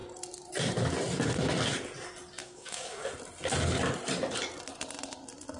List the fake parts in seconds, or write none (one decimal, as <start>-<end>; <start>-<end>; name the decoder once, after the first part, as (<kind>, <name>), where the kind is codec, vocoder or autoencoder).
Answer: 2.4-3.1 (codec, DAC)